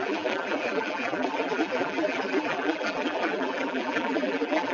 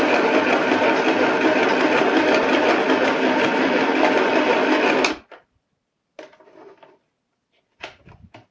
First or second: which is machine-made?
first